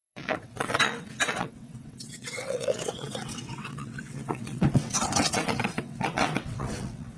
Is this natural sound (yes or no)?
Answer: no